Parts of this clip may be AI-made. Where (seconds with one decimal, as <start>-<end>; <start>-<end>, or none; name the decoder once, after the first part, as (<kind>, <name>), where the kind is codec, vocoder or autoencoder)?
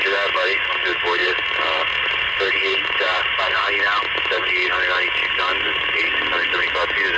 1.2-3.7 (vocoder, BigVGAN v2)